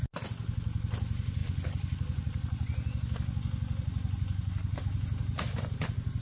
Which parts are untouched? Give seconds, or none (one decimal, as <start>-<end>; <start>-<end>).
0.0-6.2